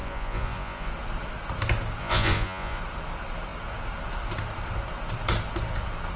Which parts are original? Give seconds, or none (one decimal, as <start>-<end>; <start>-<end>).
0.9-2.0; 2.8-6.2